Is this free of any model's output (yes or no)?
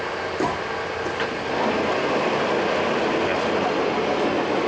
yes